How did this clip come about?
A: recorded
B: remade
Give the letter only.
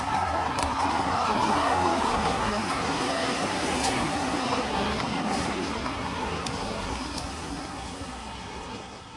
B